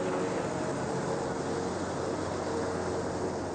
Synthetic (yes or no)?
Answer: no